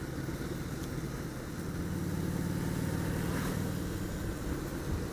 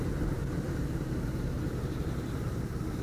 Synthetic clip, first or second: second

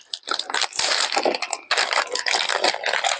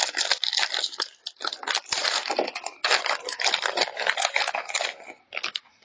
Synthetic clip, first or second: first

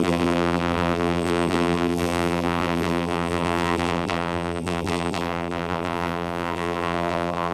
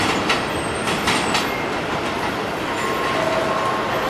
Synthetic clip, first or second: first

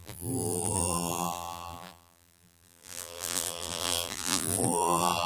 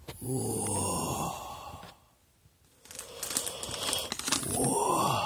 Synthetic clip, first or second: first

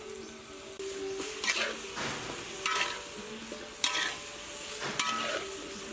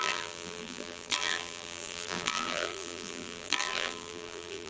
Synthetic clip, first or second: second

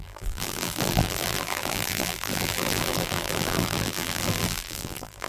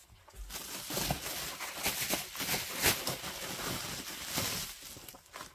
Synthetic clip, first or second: first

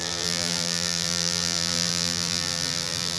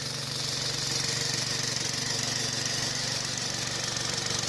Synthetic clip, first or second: first